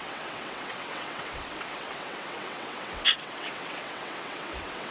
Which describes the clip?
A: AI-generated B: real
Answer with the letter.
A